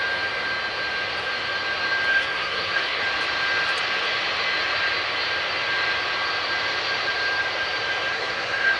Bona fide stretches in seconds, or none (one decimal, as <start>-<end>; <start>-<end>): 0.0-2.1; 3.0-8.1